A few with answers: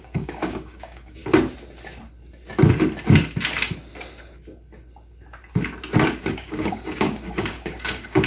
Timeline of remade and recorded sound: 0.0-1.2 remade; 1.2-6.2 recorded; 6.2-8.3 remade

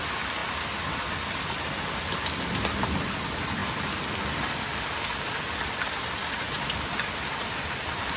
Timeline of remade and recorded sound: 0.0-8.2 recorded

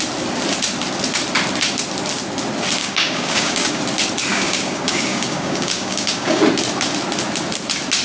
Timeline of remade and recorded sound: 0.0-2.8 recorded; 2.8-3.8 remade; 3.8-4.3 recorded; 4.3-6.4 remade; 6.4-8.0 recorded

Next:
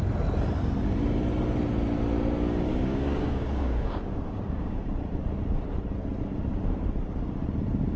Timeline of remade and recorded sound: 0.0-2.7 recorded; 2.7-4.9 remade; 4.9-8.0 recorded

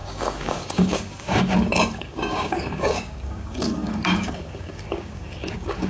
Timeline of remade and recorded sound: 0.0-5.9 remade

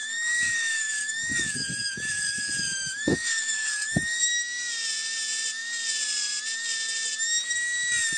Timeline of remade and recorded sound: 0.0-4.2 remade; 4.2-8.2 recorded

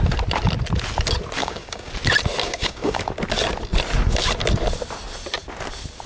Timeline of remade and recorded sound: 0.0-1.4 recorded; 1.4-1.9 remade; 1.9-2.4 recorded; 2.4-3.0 remade; 3.0-6.1 recorded